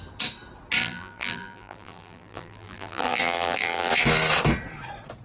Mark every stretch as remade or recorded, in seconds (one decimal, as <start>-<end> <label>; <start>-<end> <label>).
0.0-0.8 recorded; 0.8-3.9 remade; 3.9-5.2 recorded